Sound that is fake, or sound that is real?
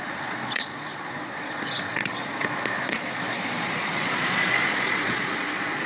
fake